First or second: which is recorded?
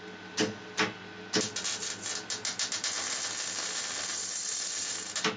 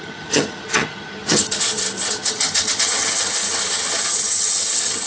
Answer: first